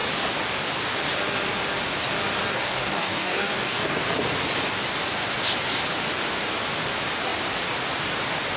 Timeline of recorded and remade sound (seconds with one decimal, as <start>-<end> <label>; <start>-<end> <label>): 0.0-2.5 recorded; 2.5-4.0 remade; 4.0-8.6 recorded